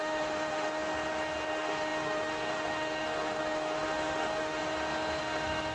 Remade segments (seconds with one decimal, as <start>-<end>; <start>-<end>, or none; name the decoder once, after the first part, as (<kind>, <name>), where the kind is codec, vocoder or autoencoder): 0.0-0.8 (autoencoder, DAC-VAE); 1.5-4.6; 5.2-5.7